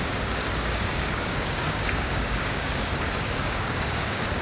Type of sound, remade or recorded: remade